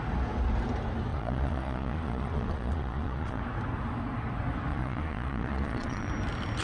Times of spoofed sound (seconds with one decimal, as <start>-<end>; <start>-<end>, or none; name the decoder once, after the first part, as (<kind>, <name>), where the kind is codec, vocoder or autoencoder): 1.1-3.4 (vocoder, Vocos); 4.7-6.1

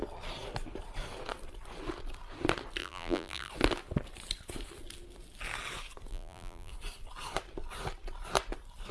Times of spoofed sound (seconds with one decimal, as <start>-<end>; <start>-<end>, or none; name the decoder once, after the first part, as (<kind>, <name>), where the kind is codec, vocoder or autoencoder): 2.8-3.5 (vocoder, BigVGAN v2); 6.1-6.7

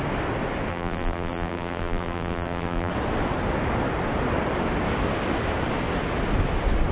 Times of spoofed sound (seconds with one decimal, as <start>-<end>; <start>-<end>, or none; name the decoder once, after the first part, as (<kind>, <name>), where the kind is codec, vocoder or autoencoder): 0.7-2.9 (vocoder, BigVGAN v2)

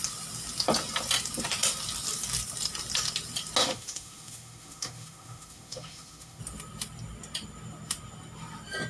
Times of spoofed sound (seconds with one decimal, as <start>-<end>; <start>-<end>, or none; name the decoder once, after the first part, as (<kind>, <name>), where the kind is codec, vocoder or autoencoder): 3.6-6.4 (autoencoder, DAC-VAE)